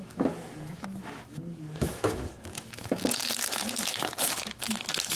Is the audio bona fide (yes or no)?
no